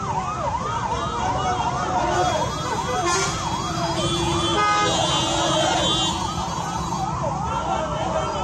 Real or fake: real